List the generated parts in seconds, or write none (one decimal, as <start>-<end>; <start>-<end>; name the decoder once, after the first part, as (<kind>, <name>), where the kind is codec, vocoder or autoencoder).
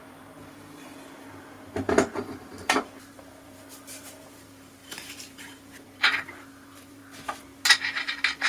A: 0.0-0.9 (vocoder, BigVGAN v2); 1.4-7.0; 8.0-8.5